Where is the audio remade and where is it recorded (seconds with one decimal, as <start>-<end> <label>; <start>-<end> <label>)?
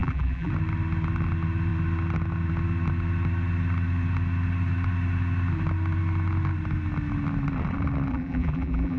0.0-0.5 remade; 0.5-8.1 recorded; 8.1-9.0 remade